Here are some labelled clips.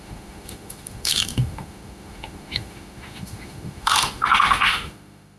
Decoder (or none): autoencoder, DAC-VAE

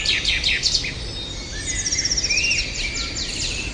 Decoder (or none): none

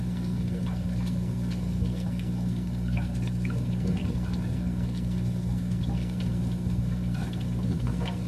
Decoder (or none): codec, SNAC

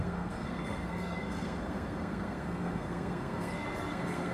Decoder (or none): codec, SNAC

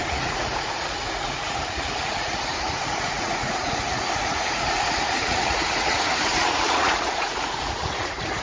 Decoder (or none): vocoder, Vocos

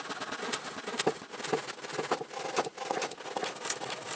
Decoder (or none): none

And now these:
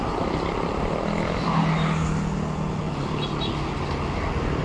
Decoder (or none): none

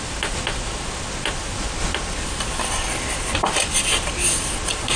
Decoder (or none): none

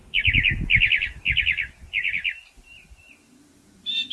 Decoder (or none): none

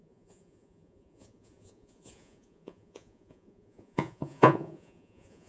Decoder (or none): vocoder, Vocos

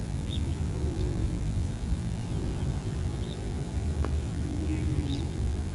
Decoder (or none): vocoder, BigVGAN v2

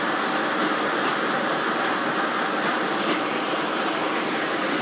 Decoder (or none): none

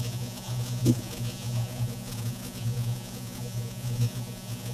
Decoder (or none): vocoder, Vocos